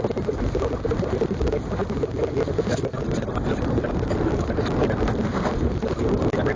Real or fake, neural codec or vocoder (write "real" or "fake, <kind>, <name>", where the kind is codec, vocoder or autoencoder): real